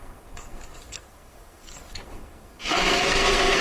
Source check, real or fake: fake